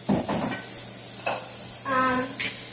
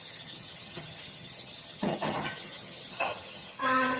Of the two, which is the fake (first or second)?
second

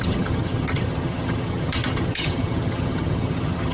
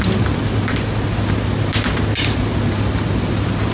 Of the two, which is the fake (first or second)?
first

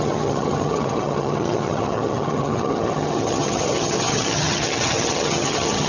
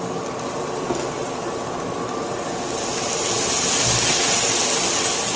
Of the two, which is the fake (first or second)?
first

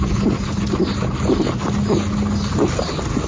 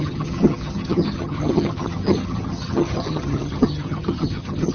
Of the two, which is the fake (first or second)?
second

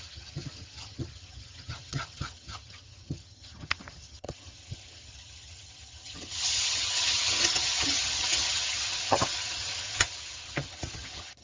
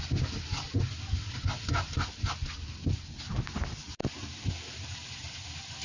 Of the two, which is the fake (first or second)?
first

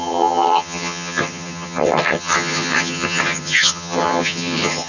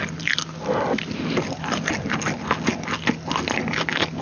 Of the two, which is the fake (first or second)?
first